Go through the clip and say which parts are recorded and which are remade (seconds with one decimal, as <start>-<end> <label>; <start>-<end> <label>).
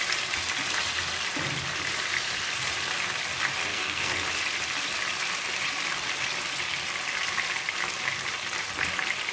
0.0-3.7 recorded; 3.7-4.2 remade; 4.2-9.3 recorded